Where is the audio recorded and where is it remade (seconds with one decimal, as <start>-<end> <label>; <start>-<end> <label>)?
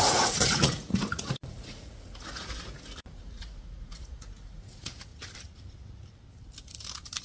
0.0-5.1 remade; 5.1-7.2 recorded